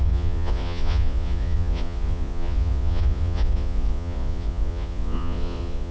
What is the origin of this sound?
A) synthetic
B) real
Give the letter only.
A